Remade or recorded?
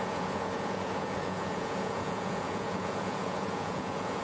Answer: remade